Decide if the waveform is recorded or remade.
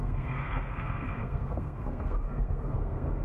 remade